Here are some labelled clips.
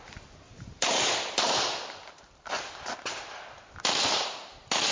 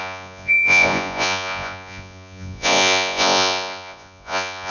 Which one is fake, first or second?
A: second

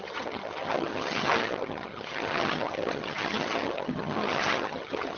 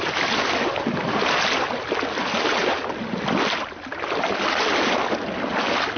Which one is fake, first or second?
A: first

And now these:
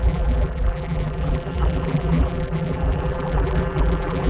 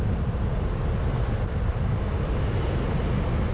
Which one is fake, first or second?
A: first